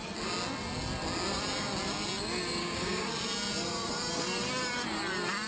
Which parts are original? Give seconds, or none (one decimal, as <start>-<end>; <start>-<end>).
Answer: 0.0-2.6; 3.1-5.5

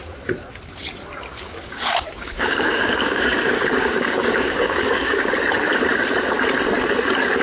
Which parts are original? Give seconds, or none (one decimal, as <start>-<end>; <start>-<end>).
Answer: 0.0-1.3; 5.3-7.4

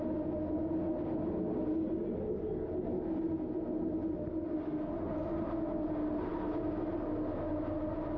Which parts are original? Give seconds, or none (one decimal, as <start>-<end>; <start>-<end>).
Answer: 0.0-8.2

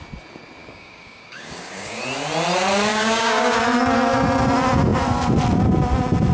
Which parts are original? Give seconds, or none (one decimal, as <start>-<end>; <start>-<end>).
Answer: 0.0-0.6; 2.0-2.9; 3.6-6.3